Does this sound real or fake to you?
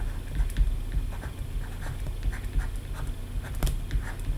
real